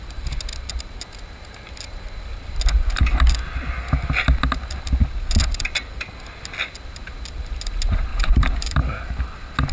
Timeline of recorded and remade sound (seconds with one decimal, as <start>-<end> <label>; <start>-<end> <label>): 0.0-8.1 recorded; 8.1-8.8 remade; 8.8-9.7 recorded